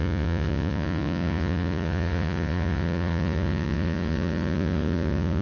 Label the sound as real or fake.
fake